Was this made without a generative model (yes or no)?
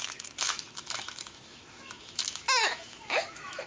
no